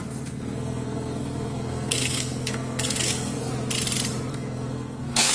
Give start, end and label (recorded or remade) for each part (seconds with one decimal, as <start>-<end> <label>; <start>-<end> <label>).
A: 0.0-3.5 remade; 3.5-4.3 recorded; 4.3-5.3 remade